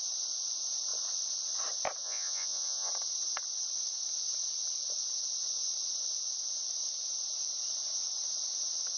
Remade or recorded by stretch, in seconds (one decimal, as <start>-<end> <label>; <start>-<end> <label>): 0.0-2.0 recorded; 2.0-2.9 remade; 2.9-9.0 recorded